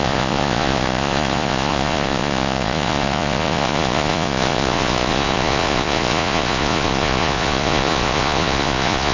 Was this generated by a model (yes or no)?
yes